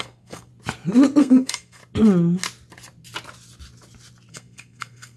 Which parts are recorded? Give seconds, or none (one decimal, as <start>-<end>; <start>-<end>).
0.5-1.2; 1.8-4.3